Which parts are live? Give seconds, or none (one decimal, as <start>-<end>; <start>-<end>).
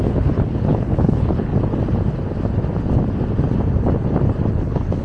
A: 1.5-4.5